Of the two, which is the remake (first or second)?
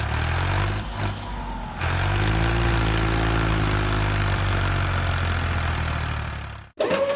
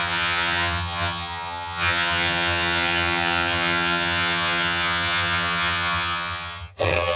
second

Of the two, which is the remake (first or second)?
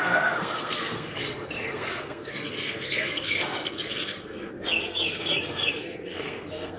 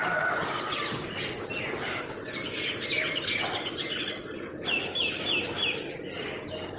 first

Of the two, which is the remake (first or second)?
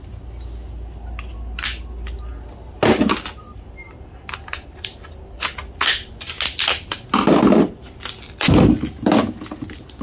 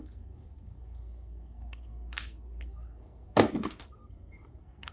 second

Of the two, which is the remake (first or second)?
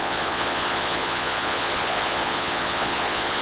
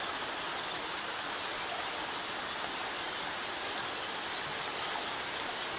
first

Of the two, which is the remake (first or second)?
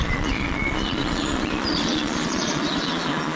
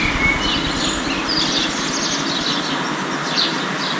first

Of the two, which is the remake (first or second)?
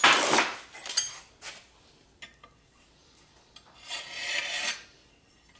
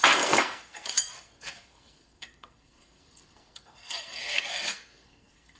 second